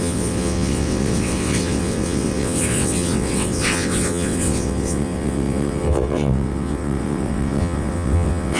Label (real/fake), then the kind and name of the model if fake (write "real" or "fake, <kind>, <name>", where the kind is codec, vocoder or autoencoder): fake, vocoder, WaveNeXt